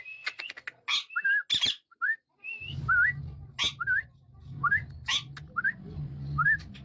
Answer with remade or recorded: recorded